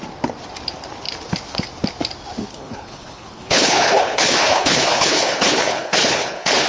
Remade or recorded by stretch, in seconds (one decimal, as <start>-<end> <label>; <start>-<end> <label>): 0.0-2.5 recorded; 2.5-6.7 remade